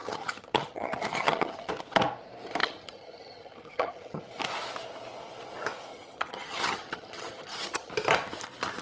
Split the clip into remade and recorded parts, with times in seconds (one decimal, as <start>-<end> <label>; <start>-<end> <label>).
0.0-1.7 remade; 1.7-2.6 recorded; 2.6-4.2 remade; 4.2-5.9 recorded; 5.9-7.9 remade; 7.9-8.8 recorded